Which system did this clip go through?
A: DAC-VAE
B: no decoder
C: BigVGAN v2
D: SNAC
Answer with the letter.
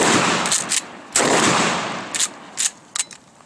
B